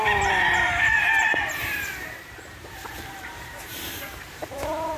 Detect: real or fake fake